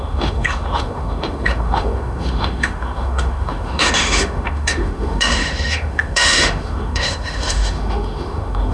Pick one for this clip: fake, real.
fake